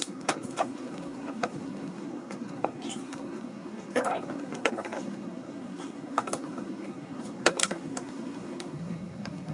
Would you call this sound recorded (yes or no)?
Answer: no